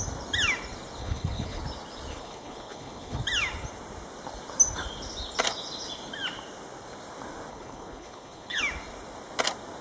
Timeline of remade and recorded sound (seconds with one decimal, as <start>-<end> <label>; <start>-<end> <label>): 0.0-1.0 recorded; 1.0-1.6 remade; 1.6-2.1 recorded; 2.1-3.2 remade; 3.2-7.5 recorded; 7.5-8.6 remade; 8.6-9.8 recorded